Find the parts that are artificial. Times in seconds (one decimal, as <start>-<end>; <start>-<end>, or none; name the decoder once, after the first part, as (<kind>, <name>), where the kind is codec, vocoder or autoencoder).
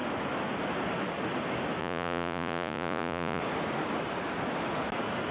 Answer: 1.8-3.4 (vocoder, Vocos)